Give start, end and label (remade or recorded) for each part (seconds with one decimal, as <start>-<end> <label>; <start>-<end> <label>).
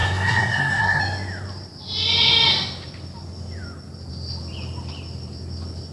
0.0-1.0 remade; 1.0-5.9 recorded